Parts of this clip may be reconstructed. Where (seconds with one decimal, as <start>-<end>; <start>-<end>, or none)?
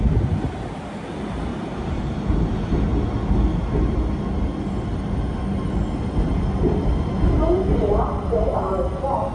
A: 1.5-2.2